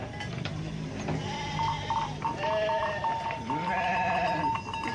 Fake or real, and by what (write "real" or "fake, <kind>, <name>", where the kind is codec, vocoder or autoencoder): real